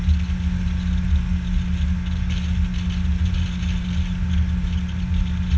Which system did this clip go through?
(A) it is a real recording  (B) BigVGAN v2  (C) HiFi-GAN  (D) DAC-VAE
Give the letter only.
A